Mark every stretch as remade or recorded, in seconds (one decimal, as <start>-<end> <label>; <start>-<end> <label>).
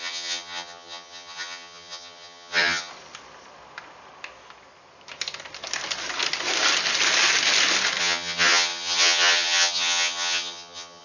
0.0-2.9 remade; 2.9-8.0 recorded; 8.0-11.0 remade